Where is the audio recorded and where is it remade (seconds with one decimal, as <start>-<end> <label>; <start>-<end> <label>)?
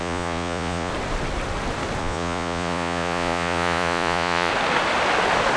0.0-0.9 remade; 0.9-2.0 recorded; 2.0-4.5 remade; 4.5-5.6 recorded